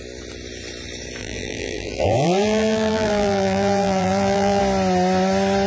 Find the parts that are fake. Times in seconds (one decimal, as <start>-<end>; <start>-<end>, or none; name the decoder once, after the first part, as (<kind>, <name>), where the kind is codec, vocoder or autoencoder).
1.2-4.6 (vocoder, BigVGAN v2)